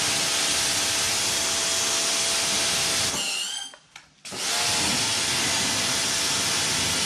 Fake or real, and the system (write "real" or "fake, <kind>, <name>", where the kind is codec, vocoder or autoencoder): real